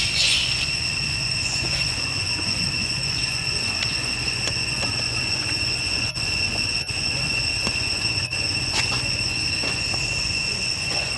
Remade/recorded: remade